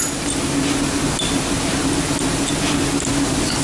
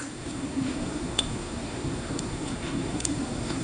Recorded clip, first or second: first